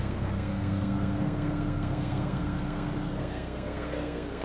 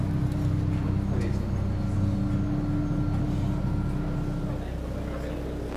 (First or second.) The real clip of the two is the second